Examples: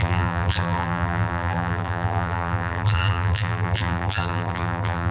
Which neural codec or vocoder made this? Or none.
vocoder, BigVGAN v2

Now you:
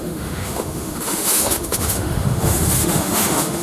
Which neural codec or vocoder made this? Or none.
autoencoder, DAC-VAE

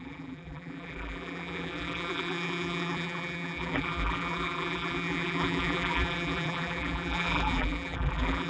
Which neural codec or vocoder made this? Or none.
vocoder, BigVGAN v2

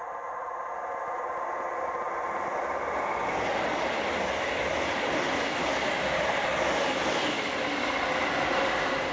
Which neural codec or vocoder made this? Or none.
none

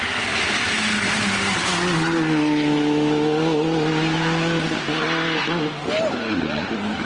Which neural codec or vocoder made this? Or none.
none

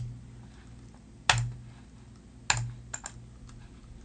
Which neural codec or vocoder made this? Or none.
none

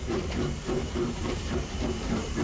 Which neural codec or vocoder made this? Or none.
vocoder, BigVGAN v2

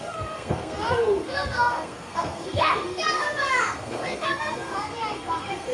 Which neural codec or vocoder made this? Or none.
codec, SNAC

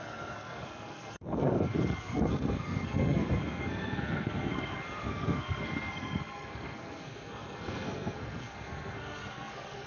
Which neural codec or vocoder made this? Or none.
codec, SNAC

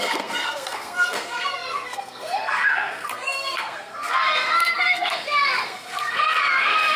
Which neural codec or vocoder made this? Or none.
codec, SNAC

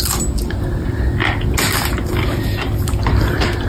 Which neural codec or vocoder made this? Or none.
none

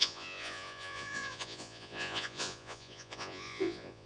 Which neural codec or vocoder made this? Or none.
vocoder, Vocos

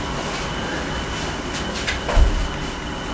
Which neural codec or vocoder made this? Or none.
none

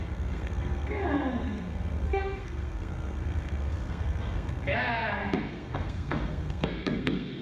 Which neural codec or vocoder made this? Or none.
codec, SNAC